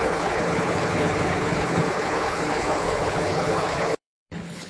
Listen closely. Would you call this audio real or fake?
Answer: fake